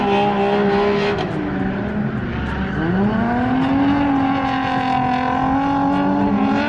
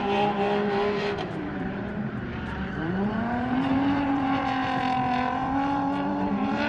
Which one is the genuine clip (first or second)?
first